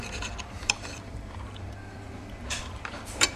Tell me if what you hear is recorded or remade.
remade